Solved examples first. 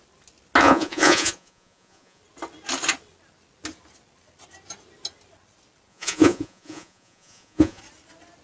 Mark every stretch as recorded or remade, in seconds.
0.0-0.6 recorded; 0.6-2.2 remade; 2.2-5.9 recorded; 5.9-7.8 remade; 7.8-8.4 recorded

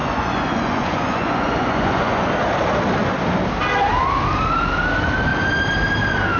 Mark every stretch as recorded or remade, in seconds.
0.0-2.3 remade; 2.3-6.4 recorded